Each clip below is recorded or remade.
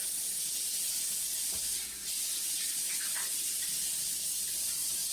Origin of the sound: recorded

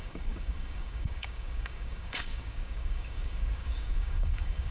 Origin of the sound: remade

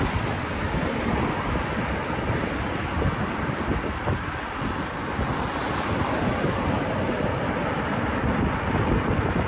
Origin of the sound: recorded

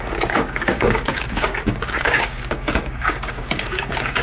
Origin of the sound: remade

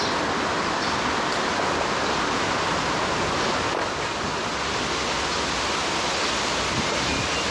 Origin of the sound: recorded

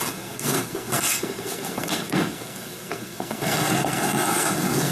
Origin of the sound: remade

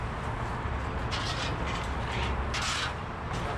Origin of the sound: recorded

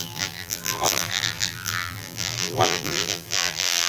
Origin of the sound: remade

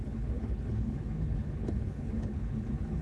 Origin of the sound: remade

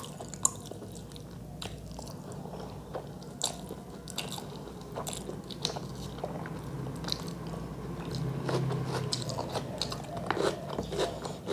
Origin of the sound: recorded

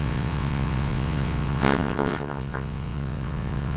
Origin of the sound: remade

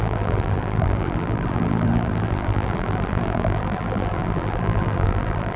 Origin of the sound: remade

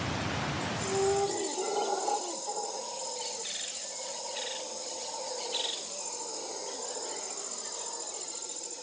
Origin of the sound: recorded